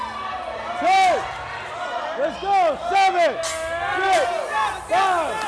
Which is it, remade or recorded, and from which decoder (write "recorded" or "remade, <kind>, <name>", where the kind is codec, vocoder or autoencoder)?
recorded